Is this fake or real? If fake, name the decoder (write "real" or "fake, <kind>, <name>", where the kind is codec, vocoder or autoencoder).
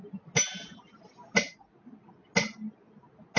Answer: real